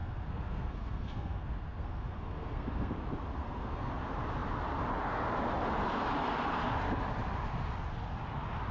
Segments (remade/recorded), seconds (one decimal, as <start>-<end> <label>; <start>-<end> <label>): 0.0-2.9 remade; 2.9-3.4 recorded; 3.4-3.9 remade; 3.9-8.7 recorded